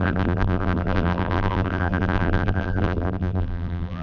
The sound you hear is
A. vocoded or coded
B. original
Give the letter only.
A